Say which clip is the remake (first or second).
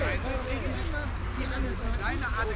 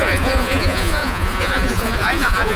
second